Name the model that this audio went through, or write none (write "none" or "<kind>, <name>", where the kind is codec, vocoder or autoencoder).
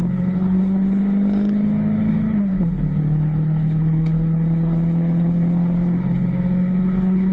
codec, HILCodec